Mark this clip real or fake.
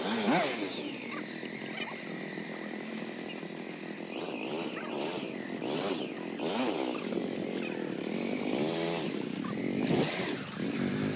real